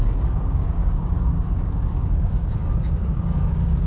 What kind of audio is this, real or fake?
fake